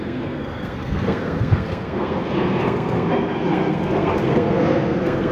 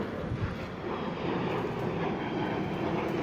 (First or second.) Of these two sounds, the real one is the second